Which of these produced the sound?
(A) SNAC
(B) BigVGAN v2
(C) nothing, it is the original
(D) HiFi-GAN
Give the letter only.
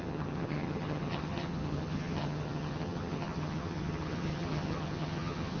D